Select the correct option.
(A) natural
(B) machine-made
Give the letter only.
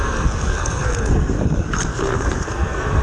B